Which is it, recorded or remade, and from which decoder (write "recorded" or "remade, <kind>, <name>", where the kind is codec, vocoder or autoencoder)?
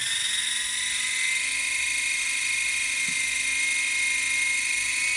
recorded